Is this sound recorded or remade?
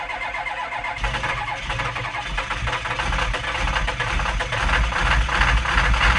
recorded